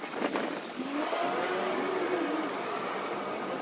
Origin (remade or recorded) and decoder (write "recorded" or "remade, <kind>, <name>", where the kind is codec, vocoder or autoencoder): recorded